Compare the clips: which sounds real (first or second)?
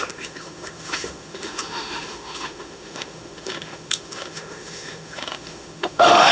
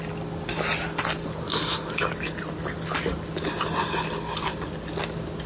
second